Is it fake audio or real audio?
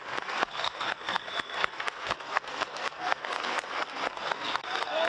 fake